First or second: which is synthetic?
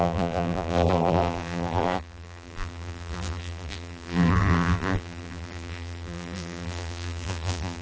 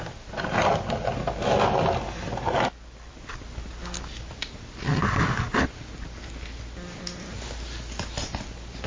first